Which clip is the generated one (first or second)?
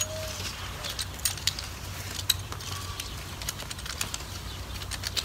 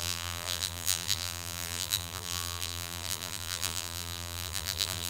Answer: second